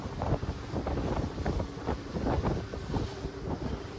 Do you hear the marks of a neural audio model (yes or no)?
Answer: no